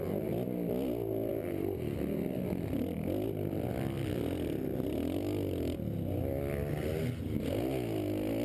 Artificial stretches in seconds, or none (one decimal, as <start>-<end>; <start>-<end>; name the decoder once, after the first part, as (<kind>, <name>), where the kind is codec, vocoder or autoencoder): none